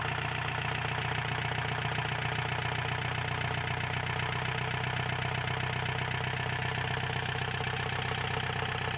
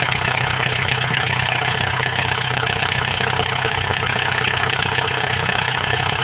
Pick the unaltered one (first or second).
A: first